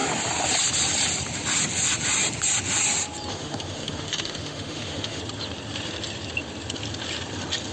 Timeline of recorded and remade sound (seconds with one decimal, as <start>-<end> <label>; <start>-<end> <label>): 0.0-3.3 recorded; 3.3-5.2 remade; 5.2-7.7 recorded